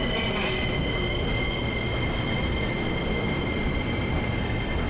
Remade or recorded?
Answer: recorded